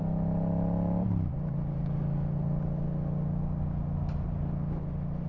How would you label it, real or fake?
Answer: real